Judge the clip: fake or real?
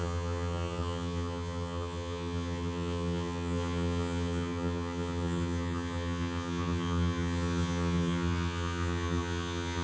fake